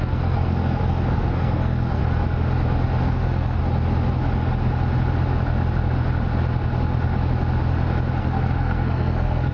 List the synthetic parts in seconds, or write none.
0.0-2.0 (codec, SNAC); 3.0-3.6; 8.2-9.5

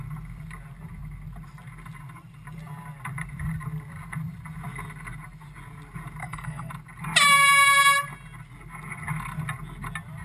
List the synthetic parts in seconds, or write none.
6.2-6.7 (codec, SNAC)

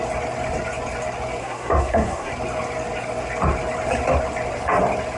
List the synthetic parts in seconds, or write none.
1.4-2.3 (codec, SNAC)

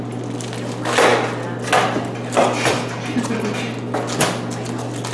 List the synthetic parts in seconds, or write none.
none